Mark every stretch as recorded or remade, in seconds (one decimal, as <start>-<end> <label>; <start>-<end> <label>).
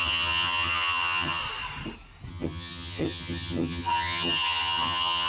0.0-1.4 remade; 1.4-2.3 recorded; 2.3-5.3 remade